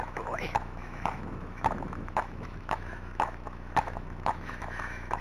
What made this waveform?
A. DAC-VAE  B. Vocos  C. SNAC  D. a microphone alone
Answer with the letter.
A